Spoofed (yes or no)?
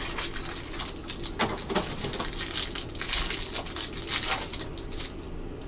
no